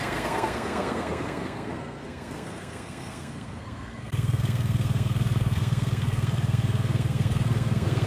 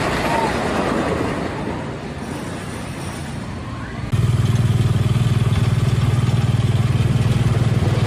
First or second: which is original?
second